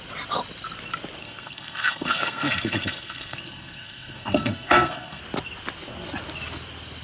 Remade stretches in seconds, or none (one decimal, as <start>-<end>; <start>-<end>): 1.2-5.2